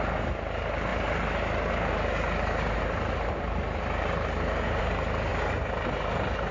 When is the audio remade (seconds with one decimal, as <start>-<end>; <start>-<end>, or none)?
none